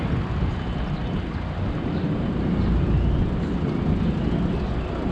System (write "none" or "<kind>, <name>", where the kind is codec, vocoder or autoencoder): none